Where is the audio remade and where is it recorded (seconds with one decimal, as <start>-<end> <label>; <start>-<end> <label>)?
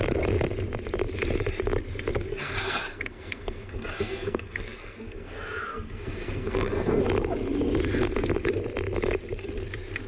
0.0-2.1 recorded; 2.1-7.0 remade; 7.0-10.1 recorded